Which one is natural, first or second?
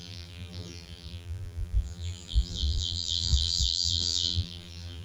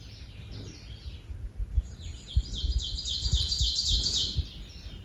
second